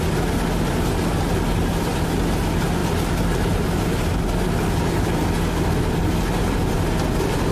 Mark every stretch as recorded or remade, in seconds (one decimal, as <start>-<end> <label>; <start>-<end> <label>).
0.0-7.5 recorded